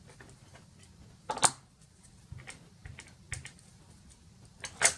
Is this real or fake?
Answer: real